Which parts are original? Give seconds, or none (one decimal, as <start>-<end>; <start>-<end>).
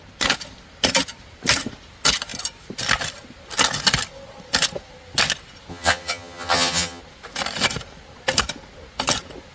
0.0-5.7; 7.0-9.5